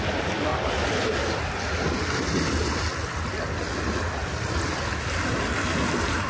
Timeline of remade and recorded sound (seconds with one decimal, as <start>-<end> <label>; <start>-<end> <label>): 0.0-6.3 recorded